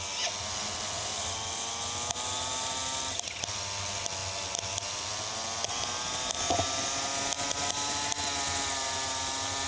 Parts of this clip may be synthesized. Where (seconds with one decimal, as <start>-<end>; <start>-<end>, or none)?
none

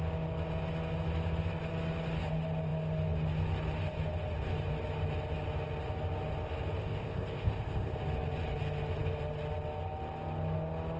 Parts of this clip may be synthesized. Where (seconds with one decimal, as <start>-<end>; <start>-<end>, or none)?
6.8-8.0

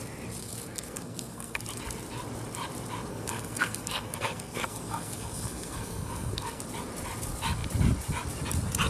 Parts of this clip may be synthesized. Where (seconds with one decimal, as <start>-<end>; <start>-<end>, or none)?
0.4-1.6; 3.1-6.6

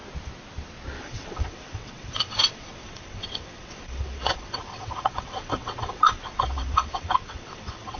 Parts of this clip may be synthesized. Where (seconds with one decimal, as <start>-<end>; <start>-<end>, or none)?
1.0-8.0

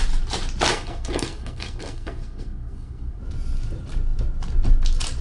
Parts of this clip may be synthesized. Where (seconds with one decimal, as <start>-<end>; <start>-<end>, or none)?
0.7-3.2